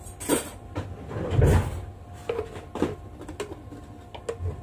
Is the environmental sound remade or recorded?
recorded